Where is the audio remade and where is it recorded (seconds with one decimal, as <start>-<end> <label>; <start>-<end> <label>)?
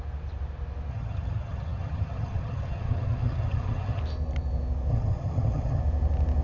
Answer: 0.0-0.9 recorded; 0.9-4.0 remade; 4.0-4.9 recorded; 4.9-5.8 remade; 5.8-6.4 recorded